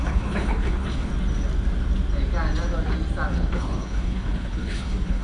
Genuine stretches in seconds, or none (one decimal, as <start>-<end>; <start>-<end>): 1.1-3.3